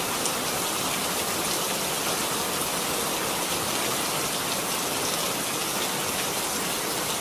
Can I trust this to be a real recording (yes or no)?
yes